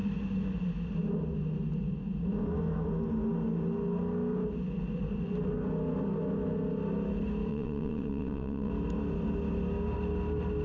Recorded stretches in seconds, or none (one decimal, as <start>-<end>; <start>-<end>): 0.0-7.5; 8.7-10.6